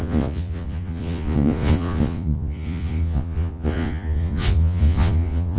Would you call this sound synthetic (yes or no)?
yes